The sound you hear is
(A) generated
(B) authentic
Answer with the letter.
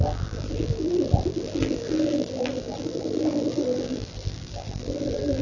A